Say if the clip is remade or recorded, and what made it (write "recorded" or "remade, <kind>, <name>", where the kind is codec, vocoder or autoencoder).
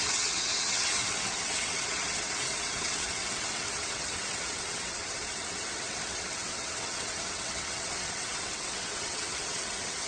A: remade, vocoder, WaveNeXt